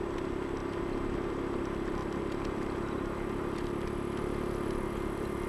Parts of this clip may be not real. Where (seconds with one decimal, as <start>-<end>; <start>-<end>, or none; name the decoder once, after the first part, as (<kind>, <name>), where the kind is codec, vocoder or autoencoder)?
none